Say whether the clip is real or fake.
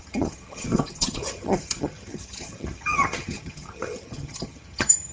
fake